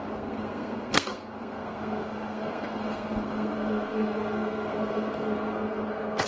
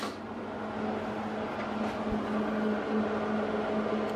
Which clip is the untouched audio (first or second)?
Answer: second